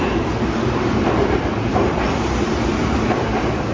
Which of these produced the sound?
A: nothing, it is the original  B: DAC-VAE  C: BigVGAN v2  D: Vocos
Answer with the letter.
C